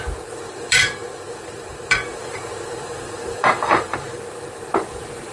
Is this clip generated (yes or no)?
yes